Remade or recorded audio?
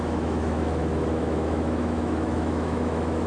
remade